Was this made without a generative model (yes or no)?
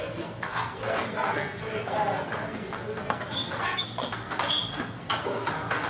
no